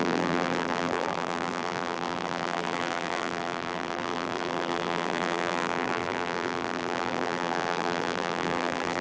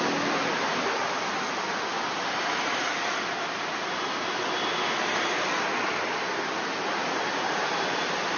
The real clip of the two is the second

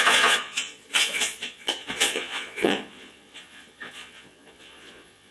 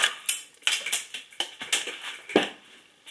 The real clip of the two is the second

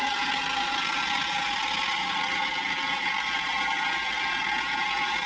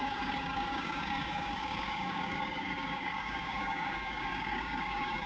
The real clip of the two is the first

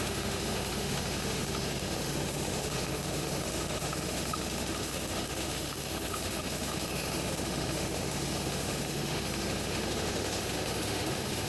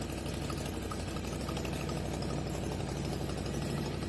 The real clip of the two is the second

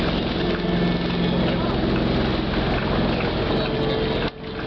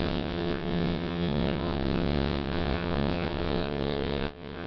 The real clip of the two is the first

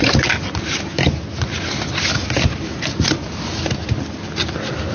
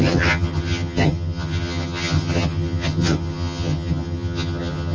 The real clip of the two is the first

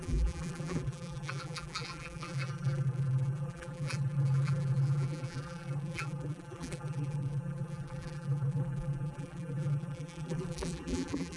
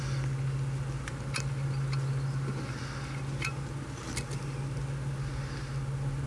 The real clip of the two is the second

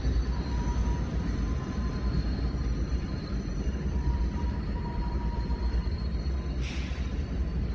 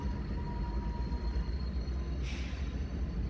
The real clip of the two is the second